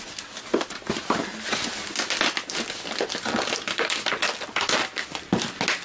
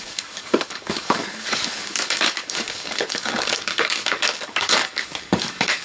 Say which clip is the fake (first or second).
second